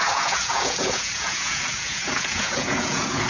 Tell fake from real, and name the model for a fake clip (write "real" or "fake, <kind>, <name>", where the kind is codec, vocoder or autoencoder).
fake, vocoder, Vocos